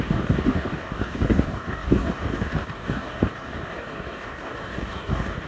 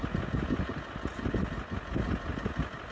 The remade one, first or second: first